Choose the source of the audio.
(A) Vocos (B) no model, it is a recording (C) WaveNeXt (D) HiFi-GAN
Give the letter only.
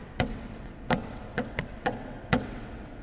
C